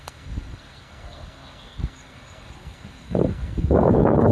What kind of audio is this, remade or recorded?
remade